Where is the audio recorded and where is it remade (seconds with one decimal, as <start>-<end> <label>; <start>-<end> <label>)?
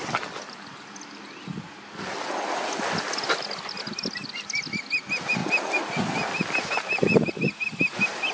0.0-8.3 recorded